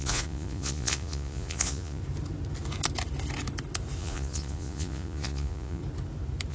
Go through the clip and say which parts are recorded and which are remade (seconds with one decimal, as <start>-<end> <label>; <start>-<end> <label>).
0.0-2.0 remade; 2.0-4.0 recorded; 4.0-5.8 remade; 5.8-6.5 recorded

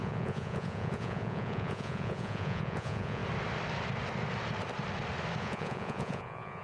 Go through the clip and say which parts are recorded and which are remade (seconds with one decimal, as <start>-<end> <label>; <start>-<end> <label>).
0.0-3.2 remade; 3.2-5.4 recorded; 5.4-6.6 remade

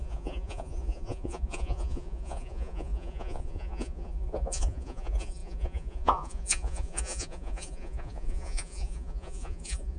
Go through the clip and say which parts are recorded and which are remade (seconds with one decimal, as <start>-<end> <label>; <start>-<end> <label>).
0.0-10.0 remade

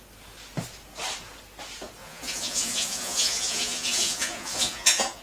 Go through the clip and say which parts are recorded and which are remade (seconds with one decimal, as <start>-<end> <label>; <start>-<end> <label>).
0.0-2.0 recorded; 2.0-5.2 remade

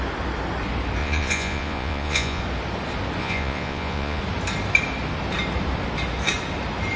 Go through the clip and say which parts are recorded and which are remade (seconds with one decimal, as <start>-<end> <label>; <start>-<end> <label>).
0.0-1.0 recorded; 1.0-2.4 remade; 2.4-3.2 recorded; 3.2-4.2 remade; 4.2-7.0 recorded